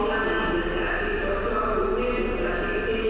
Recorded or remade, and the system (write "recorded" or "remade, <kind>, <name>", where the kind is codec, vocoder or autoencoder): recorded